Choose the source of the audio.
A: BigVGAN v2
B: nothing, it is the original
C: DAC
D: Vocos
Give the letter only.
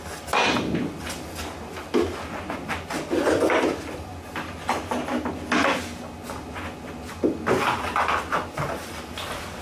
B